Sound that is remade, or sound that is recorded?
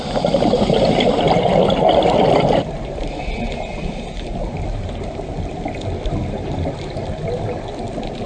recorded